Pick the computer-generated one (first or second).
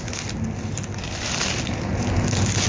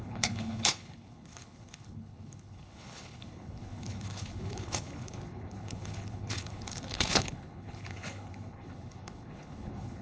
second